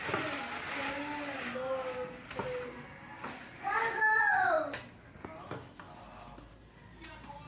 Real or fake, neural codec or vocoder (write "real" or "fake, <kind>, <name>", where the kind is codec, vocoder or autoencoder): real